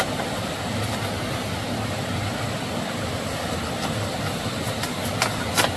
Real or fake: real